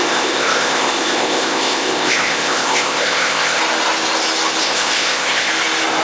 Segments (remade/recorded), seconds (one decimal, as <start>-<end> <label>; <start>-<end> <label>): 0.0-3.6 remade; 3.6-4.6 recorded; 4.6-5.5 remade; 5.5-6.0 recorded